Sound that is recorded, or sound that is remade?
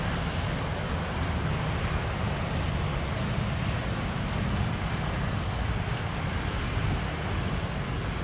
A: recorded